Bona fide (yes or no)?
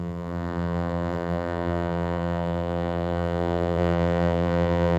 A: no